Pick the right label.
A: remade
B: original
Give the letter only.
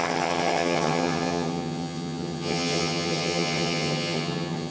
A